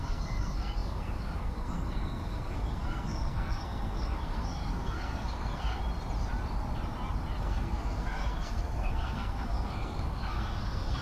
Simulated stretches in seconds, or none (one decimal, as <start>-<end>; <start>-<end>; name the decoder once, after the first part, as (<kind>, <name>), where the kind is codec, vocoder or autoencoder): 0.0-5.8 (codec, SNAC); 7.4-11.0